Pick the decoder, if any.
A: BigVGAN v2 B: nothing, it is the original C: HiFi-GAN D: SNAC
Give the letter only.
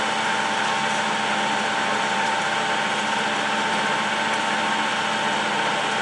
B